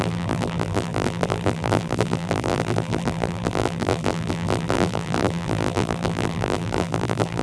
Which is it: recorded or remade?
remade